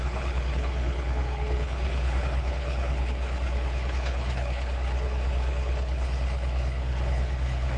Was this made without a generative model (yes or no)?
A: no